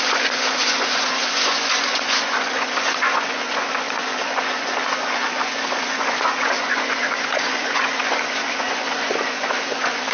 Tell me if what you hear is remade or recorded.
remade